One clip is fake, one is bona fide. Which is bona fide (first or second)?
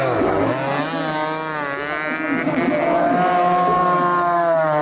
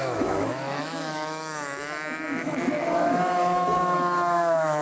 first